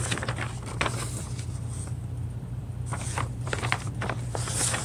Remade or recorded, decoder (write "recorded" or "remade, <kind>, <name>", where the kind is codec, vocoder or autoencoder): remade, vocoder, BigVGAN v2